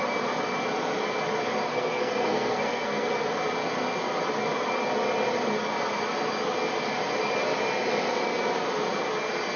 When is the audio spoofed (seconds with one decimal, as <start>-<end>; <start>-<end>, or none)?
1.7-3.1

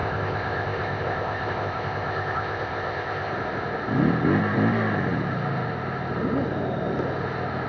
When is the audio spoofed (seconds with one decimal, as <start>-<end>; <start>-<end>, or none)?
0.0-3.3